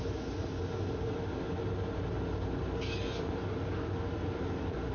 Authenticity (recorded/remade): recorded